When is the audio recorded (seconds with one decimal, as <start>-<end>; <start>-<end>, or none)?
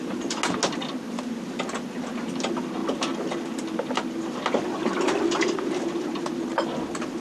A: 0.0-7.2